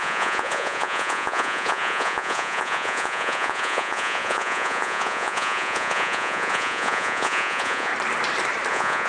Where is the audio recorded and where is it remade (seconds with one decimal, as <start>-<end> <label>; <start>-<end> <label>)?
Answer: 0.0-7.9 remade; 7.9-8.7 recorded; 8.7-9.1 remade